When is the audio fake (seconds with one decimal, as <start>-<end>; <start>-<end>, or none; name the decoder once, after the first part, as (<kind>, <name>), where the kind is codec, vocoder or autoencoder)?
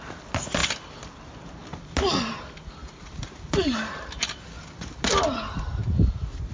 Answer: 2.8-4.1 (vocoder, BigVGAN v2)